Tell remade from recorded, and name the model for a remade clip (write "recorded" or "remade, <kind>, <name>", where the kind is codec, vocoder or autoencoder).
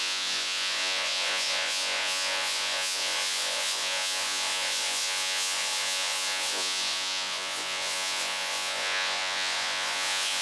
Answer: remade, vocoder, Vocos